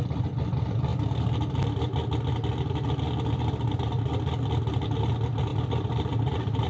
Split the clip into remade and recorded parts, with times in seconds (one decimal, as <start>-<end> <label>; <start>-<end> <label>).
0.0-5.5 recorded; 5.5-6.7 remade